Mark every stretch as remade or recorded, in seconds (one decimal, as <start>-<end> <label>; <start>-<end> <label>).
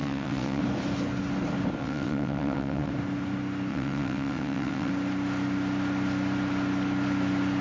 0.0-0.6 remade; 0.6-1.8 recorded; 1.8-2.9 remade; 2.9-3.7 recorded; 3.7-4.9 remade; 4.9-7.6 recorded